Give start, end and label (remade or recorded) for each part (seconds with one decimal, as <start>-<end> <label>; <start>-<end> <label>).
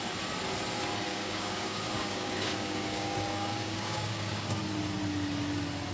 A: 0.0-1.1 recorded; 1.1-4.6 remade; 4.6-5.9 recorded